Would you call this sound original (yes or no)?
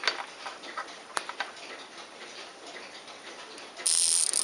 yes